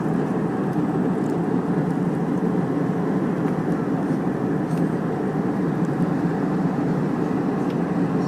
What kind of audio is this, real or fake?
real